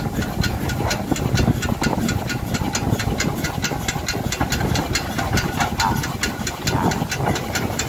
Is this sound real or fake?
real